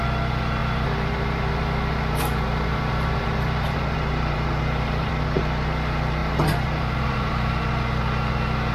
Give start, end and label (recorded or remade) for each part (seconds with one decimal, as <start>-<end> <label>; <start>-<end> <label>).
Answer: 0.0-0.6 recorded; 0.6-5.1 remade; 5.1-6.2 recorded; 6.2-7.5 remade; 7.5-8.7 recorded